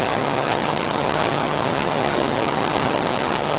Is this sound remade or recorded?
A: remade